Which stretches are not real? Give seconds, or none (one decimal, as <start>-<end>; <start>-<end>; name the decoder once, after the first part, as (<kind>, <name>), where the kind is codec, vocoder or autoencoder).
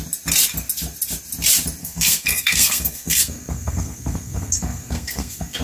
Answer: 1.8-5.6 (codec, SNAC)